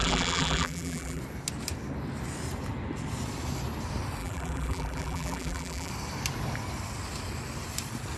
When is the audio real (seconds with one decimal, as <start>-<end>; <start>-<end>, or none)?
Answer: 1.2-4.2; 5.9-8.2